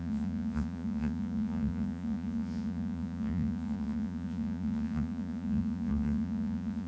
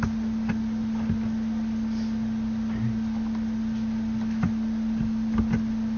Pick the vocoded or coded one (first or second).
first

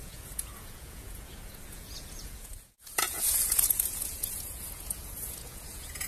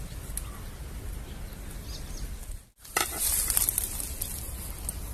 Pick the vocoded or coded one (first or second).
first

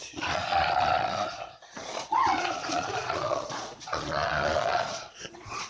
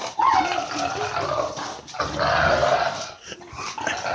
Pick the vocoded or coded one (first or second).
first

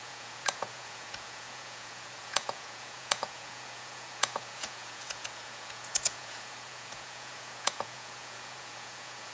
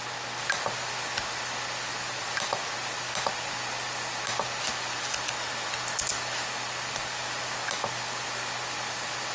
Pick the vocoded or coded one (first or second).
first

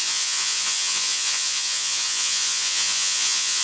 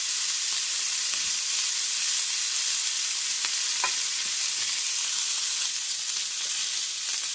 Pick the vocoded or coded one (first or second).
first